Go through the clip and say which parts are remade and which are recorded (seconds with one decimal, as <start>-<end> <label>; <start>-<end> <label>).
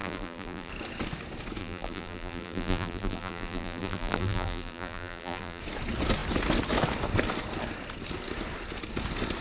0.0-0.7 remade; 0.7-1.6 recorded; 1.6-5.6 remade; 5.6-9.4 recorded